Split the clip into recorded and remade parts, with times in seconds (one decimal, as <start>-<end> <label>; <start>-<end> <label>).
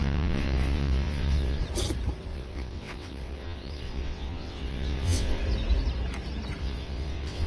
0.0-1.6 remade; 1.6-2.3 recorded; 2.3-5.4 remade; 5.4-6.6 recorded; 6.6-7.5 remade